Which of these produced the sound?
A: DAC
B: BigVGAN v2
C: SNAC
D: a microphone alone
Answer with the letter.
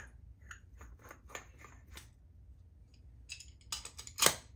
D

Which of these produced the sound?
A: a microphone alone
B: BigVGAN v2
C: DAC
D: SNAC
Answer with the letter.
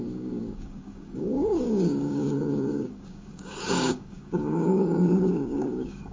C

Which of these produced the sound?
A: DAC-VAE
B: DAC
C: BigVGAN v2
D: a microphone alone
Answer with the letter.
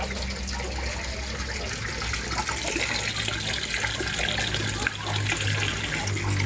D